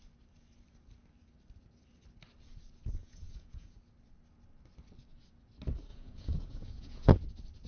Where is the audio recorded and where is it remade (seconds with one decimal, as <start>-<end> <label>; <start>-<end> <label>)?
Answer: 0.0-3.0 recorded; 3.0-3.9 remade; 3.9-5.9 recorded; 5.9-7.1 remade; 7.1-7.7 recorded